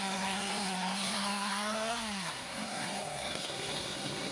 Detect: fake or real fake